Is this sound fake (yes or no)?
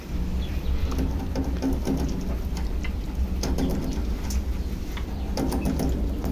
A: no